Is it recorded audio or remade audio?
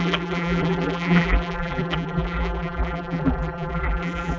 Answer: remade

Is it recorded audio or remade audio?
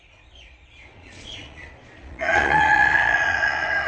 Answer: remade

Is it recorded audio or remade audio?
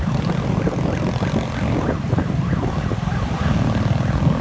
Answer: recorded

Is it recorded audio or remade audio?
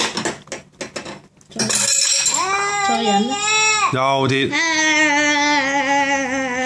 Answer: recorded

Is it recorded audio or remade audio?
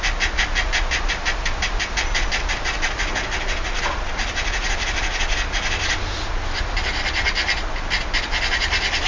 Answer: recorded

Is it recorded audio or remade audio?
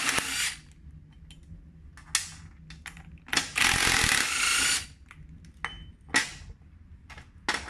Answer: recorded